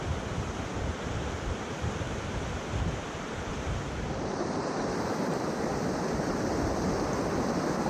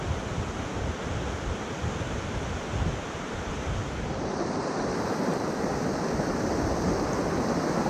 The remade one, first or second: first